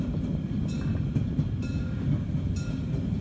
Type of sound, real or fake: real